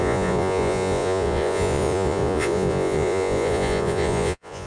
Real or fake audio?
fake